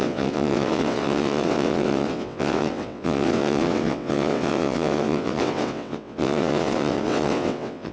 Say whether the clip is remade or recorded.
remade